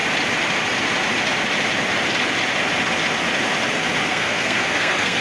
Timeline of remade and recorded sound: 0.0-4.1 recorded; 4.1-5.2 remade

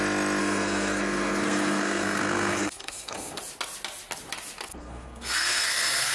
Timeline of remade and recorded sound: 0.0-0.4 recorded; 0.4-3.4 remade; 3.4-4.7 recorded; 4.7-6.1 remade

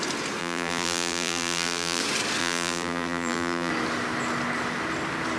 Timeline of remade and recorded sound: 0.0-0.4 recorded; 0.4-2.0 remade; 2.0-2.4 recorded; 2.4-3.7 remade; 3.7-5.4 recorded

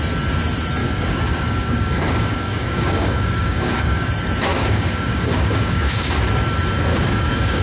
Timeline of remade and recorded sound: 0.0-0.8 recorded; 0.8-4.1 remade; 4.1-4.5 recorded; 4.5-6.1 remade; 6.1-6.9 recorded; 6.9-7.6 remade

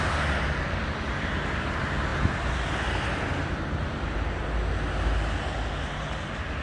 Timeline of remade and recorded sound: 0.0-6.6 recorded

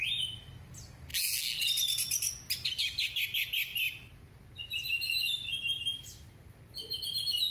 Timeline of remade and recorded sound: 0.0-1.1 recorded; 1.1-1.6 remade; 1.6-7.5 recorded

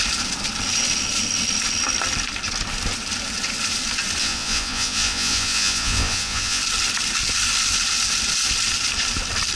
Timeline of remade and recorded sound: 0.0-4.2 recorded; 4.2-6.6 remade; 6.6-9.6 recorded

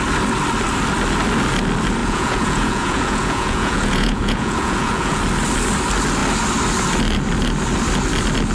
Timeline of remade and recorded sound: 0.0-2.0 recorded; 2.0-5.2 remade; 5.2-8.5 recorded